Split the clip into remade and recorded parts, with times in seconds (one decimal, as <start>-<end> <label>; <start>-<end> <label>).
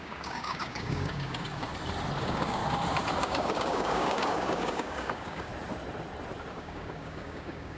0.0-1.7 remade; 1.7-2.2 recorded; 2.2-2.6 remade; 2.6-3.2 recorded; 3.2-5.5 remade; 5.5-6.5 recorded; 6.5-7.8 remade